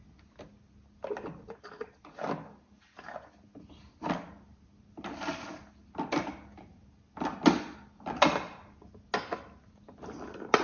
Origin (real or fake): real